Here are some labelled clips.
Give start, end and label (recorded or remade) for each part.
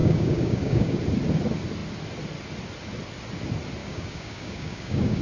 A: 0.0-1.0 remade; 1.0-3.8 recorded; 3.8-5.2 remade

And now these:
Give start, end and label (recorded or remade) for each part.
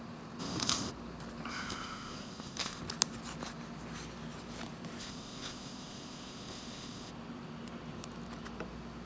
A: 0.0-0.4 recorded; 0.4-0.9 remade; 0.9-1.5 recorded; 1.5-2.8 remade; 2.8-5.0 recorded; 5.0-7.1 remade; 7.1-9.1 recorded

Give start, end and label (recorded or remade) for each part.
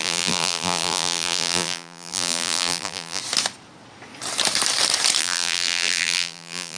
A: 0.0-3.2 remade; 3.2-5.2 recorded; 5.2-6.8 remade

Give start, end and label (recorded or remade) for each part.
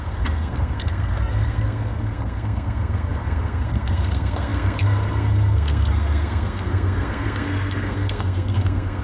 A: 0.0-9.0 remade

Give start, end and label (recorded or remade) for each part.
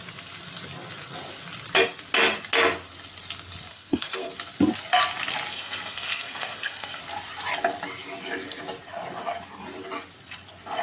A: 0.0-3.7 recorded; 3.7-4.3 remade; 4.3-5.5 recorded; 5.5-7.0 remade; 7.0-10.8 recorded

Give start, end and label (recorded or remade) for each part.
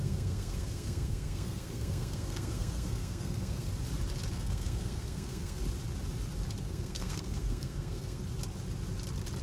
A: 0.0-3.7 remade; 3.7-4.3 recorded; 4.3-5.6 remade; 5.6-6.6 recorded; 6.6-8.2 remade; 8.2-9.4 recorded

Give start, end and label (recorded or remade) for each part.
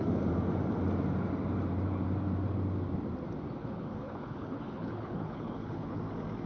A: 0.0-3.6 recorded; 3.6-6.0 remade; 6.0-6.5 recorded